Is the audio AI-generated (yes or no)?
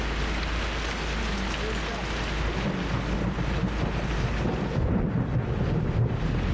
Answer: no